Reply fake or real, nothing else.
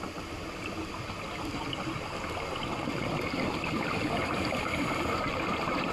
real